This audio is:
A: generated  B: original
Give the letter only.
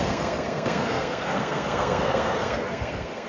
A